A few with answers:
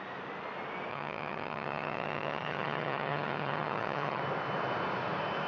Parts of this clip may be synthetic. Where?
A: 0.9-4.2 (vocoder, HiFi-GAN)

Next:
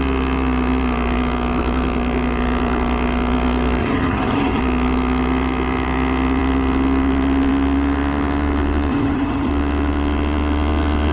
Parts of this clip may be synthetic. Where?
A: 3.8-4.6 (vocoder, HiFi-GAN); 8.9-9.5

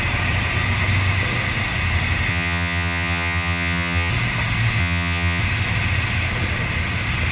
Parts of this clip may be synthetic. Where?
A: 2.3-4.1 (vocoder, HiFi-GAN); 4.8-5.4

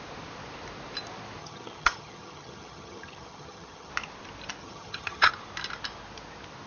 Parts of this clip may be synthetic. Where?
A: 1.4-3.9 (vocoder, HiFi-GAN); 4.6-5.3

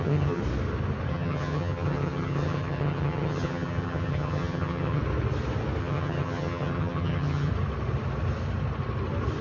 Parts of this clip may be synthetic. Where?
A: 0.0-0.4 (vocoder, HiFi-GAN); 1.1-5.0; 5.8-7.5

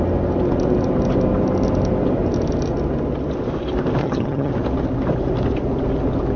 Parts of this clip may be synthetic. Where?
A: 4.0-4.5 (vocoder, HiFi-GAN)